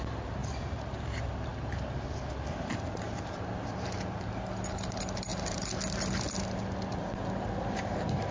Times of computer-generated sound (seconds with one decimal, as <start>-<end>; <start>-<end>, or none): 0.0-0.4; 0.9-1.5; 2.9-5.3; 6.4-8.3